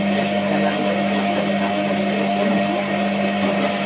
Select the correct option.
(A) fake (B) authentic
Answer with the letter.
B